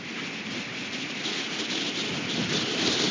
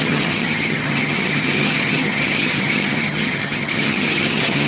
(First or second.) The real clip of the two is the first